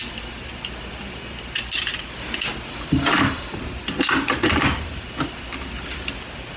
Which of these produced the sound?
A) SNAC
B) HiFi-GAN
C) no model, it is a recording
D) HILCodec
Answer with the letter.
C